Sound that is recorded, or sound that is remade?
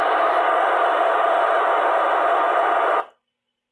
recorded